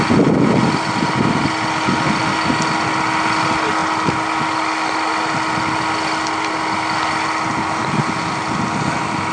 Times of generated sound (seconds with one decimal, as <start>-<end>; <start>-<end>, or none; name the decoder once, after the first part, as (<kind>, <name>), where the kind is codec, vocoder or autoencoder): none